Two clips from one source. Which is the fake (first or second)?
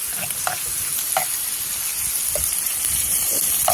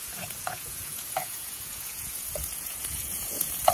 second